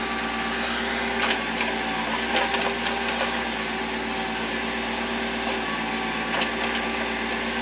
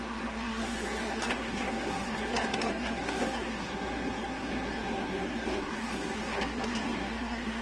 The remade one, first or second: second